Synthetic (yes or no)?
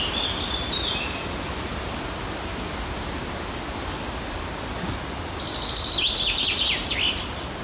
no